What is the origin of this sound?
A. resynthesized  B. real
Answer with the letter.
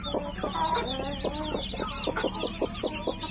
B